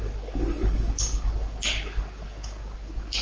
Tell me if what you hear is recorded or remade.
remade